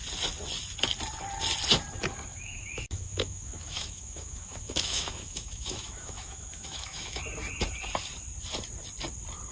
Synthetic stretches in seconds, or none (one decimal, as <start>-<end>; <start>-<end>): 2.3-7.2